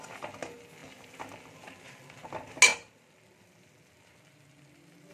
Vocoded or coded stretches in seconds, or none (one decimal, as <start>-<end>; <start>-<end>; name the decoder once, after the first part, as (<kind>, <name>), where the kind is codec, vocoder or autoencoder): none